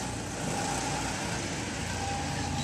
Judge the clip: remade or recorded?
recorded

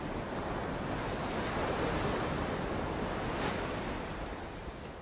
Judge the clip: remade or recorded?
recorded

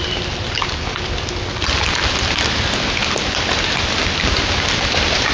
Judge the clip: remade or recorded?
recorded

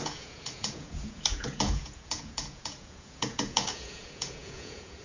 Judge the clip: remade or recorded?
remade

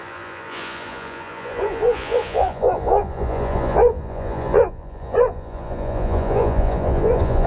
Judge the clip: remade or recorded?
remade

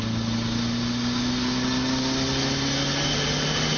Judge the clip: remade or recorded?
recorded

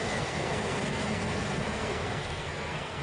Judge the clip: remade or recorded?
remade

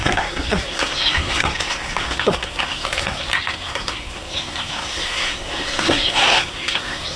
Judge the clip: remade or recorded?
remade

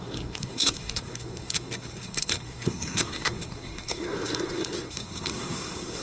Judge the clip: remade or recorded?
remade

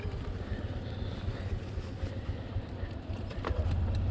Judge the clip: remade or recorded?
recorded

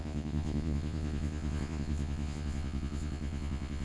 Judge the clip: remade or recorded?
remade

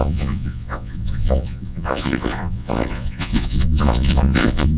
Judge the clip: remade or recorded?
remade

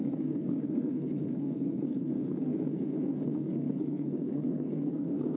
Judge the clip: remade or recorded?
remade